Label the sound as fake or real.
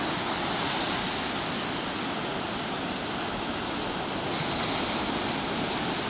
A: real